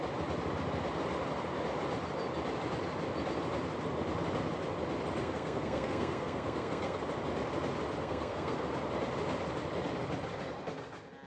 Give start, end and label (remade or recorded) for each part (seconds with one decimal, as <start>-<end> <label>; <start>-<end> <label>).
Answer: 0.0-5.2 recorded; 5.2-7.0 remade; 7.0-8.0 recorded; 8.0-8.7 remade; 8.7-11.3 recorded